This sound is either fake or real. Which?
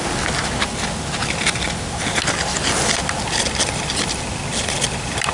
real